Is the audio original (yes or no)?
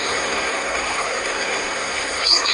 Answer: no